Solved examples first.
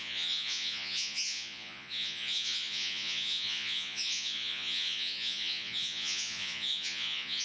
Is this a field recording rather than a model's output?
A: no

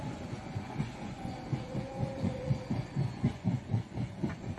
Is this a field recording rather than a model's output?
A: no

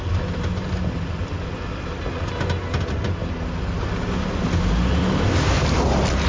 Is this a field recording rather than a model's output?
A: yes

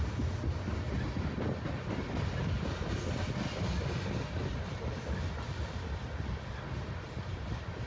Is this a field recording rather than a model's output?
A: yes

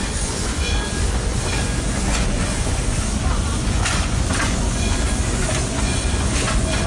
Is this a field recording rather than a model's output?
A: no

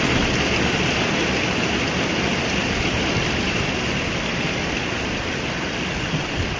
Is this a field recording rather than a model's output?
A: yes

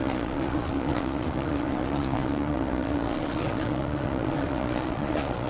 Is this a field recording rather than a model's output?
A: no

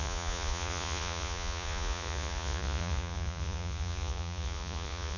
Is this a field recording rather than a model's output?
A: no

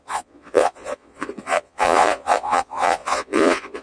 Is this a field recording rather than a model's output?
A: no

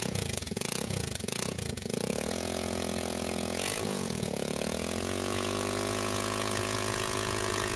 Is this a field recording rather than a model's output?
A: no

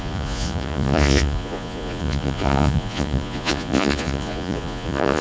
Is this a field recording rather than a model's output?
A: no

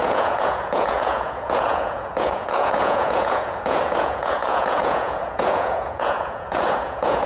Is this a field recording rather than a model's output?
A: no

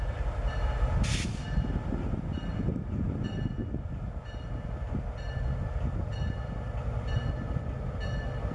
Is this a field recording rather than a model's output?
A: yes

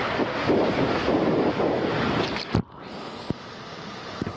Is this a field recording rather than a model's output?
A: yes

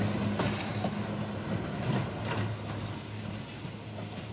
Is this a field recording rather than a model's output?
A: yes